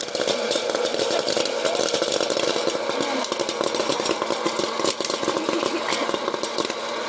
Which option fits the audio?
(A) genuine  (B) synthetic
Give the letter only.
B